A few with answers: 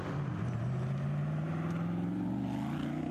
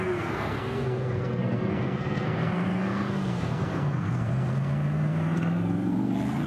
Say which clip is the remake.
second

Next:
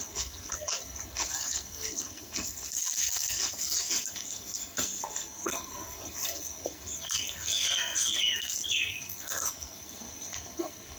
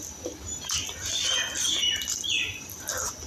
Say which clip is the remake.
first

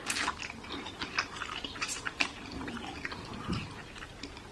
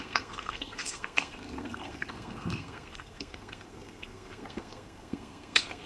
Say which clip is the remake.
second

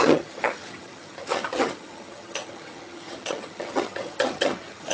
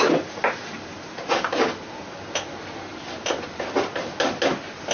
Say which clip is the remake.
first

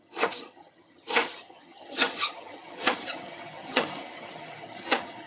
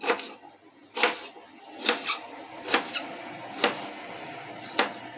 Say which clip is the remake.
first